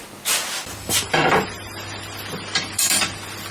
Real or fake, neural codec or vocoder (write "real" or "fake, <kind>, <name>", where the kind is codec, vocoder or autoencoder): real